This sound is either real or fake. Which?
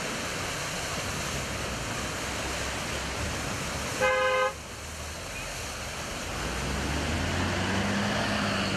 real